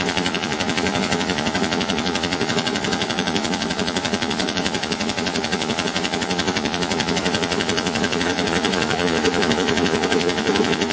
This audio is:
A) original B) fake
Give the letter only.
B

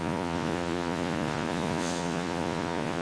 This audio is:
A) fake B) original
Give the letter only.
A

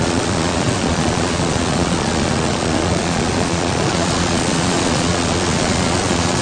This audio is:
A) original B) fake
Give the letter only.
B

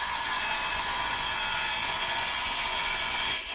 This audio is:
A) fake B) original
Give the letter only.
A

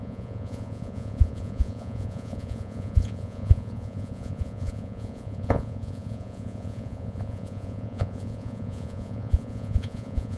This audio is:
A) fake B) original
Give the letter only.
A